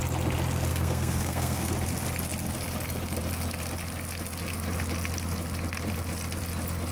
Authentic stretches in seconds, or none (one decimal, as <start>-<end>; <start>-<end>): 0.0-0.7; 1.7-6.9